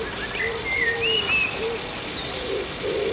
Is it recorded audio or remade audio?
recorded